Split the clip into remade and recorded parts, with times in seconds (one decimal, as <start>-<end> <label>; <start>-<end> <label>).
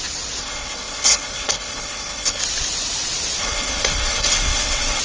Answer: 0.0-0.4 recorded; 0.4-2.4 remade; 2.4-3.4 recorded; 3.4-5.0 remade